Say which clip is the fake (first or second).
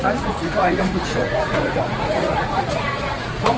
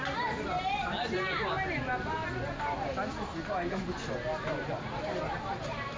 first